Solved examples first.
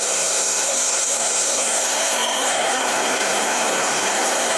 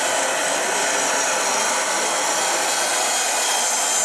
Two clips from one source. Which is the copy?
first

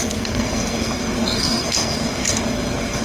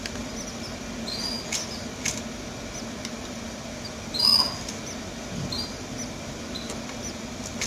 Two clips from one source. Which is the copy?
first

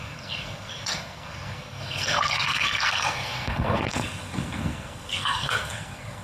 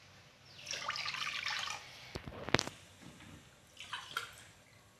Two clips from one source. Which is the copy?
first